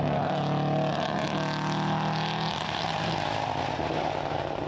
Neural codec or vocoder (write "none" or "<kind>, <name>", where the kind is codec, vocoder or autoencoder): none